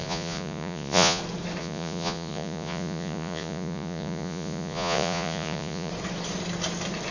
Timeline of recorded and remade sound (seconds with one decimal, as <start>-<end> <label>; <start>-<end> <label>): 0.0-1.2 remade; 1.2-1.6 recorded; 1.6-5.9 remade; 5.9-7.1 recorded